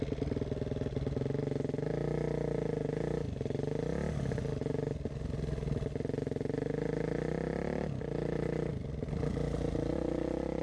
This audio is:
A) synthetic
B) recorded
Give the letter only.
B